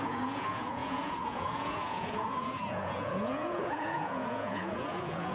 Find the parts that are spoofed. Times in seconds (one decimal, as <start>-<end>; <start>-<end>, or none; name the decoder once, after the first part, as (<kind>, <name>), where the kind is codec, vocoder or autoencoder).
0.0-5.3 (vocoder, Vocos)